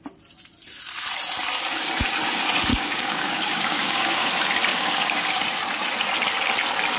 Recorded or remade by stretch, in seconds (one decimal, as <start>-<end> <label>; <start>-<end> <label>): 0.0-2.7 recorded; 2.7-4.3 remade; 4.3-4.7 recorded; 4.7-5.4 remade; 5.4-7.0 recorded